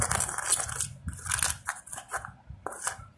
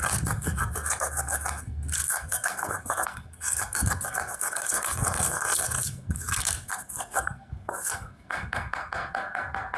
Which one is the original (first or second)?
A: first